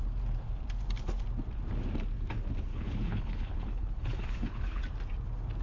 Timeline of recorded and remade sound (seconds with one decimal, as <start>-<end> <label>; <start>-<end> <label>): 0.0-2.7 recorded; 2.7-4.8 remade; 4.8-5.6 recorded